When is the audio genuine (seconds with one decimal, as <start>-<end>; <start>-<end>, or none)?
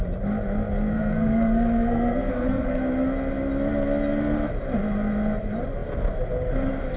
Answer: 0.0-0.9; 2.8-7.0